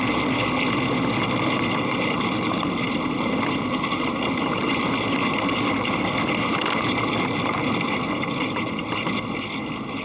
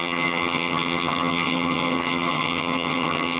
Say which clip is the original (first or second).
first